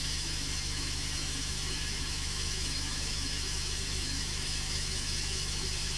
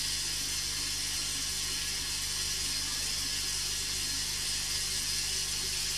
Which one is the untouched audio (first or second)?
second